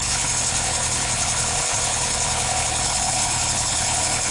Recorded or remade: remade